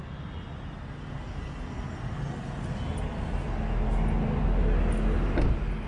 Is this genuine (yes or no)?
yes